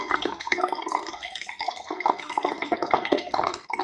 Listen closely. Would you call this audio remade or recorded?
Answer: remade